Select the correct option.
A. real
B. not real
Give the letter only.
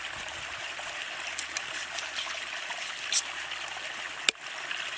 A